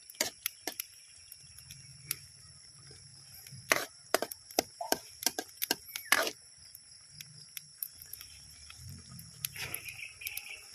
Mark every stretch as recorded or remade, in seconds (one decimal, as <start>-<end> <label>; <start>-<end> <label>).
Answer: 0.0-3.1 recorded; 3.1-5.1 remade; 5.1-7.7 recorded; 7.7-9.4 remade; 9.4-10.7 recorded